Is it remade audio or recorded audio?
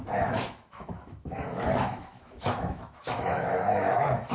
remade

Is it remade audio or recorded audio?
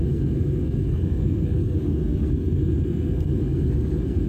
remade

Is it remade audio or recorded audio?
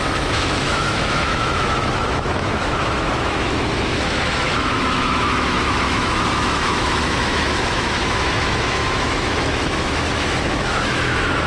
remade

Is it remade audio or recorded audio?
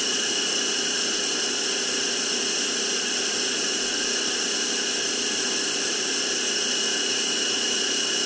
recorded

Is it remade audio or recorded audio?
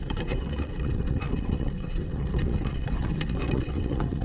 remade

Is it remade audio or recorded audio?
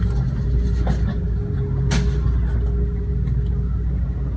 recorded